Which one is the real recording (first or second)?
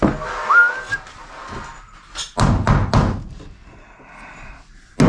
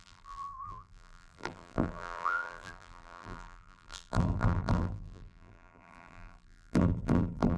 first